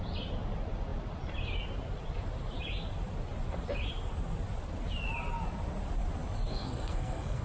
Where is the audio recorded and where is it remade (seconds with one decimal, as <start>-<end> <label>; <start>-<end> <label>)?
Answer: 0.0-6.5 recorded; 6.5-7.4 remade